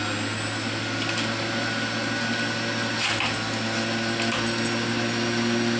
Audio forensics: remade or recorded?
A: recorded